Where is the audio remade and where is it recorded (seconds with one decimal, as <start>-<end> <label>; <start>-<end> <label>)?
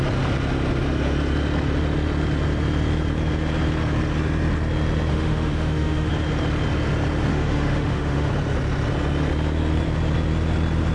0.0-5.1 recorded; 5.1-6.1 remade; 6.1-7.3 recorded; 7.3-8.3 remade; 8.3-10.9 recorded